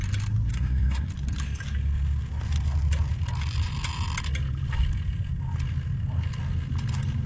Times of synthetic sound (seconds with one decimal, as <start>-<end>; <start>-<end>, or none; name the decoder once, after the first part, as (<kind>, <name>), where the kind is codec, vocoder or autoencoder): 0.5-1.1 (codec, SNAC)